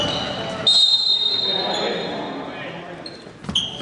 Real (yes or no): yes